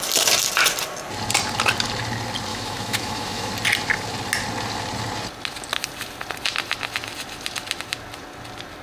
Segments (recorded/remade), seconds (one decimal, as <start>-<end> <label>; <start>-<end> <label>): 0.0-2.5 recorded; 2.5-3.5 remade; 3.5-8.8 recorded